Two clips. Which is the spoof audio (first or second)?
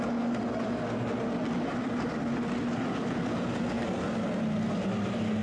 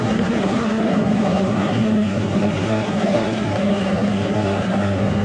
second